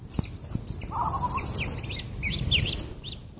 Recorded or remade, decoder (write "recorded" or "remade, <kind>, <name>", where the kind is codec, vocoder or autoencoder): remade, vocoder, BigVGAN v2